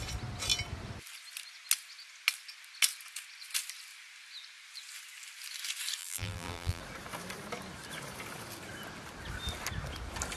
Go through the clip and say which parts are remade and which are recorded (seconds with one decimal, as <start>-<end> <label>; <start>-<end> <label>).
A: 0.0-6.0 recorded; 6.0-6.8 remade; 6.8-10.4 recorded